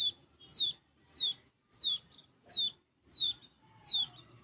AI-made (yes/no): yes